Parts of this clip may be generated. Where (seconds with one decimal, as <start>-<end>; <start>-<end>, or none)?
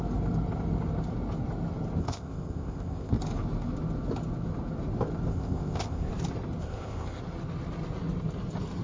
2.0-3.2; 5.3-6.1; 6.6-7.2